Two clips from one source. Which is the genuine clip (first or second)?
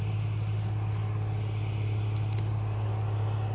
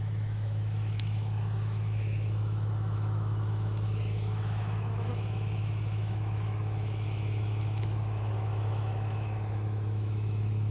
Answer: first